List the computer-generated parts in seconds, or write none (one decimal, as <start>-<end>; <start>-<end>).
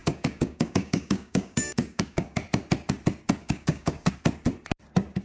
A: 0.0-2.4; 3.4-4.1